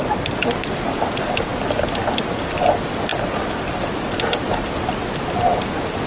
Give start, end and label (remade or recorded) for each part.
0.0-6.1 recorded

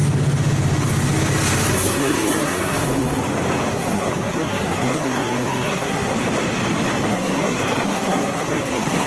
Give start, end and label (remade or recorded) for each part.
0.0-1.7 recorded; 1.7-3.2 remade; 3.2-3.7 recorded; 3.7-6.1 remade; 6.1-7.1 recorded; 7.1-9.1 remade

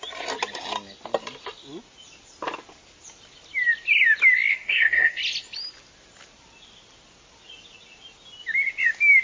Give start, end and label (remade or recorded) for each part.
0.0-4.5 recorded; 4.5-5.2 remade; 5.2-9.2 recorded